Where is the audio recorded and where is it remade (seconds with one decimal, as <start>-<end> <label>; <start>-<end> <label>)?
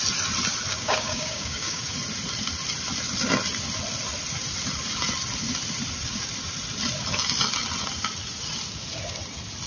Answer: 0.0-0.7 recorded; 0.7-1.8 remade; 1.8-9.7 recorded